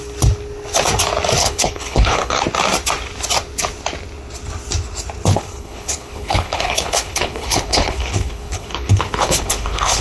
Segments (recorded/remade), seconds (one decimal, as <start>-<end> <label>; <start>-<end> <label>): 0.0-1.4 recorded; 1.4-2.4 remade; 2.4-5.3 recorded; 5.3-10.0 remade